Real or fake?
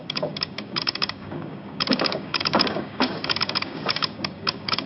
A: fake